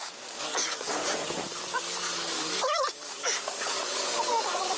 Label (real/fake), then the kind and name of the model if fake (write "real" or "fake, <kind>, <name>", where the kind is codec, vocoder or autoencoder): fake, codec, DAC